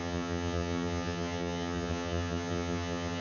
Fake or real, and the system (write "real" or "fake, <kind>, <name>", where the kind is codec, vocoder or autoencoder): fake, vocoder, HiFi-GAN